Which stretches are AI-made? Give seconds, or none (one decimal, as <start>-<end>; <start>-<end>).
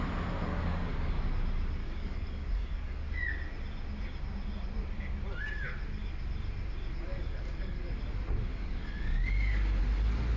0.5-1.1; 1.8-3.2; 7.1-8.0; 8.5-9.8